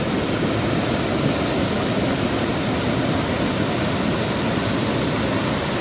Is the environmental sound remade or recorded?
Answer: recorded